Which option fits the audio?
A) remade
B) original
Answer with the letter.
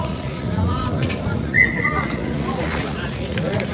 A